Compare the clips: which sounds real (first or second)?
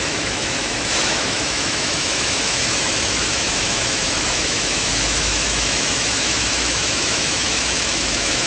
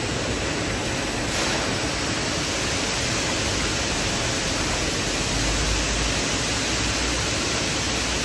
second